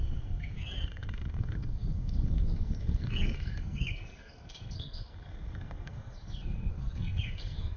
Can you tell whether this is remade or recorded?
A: remade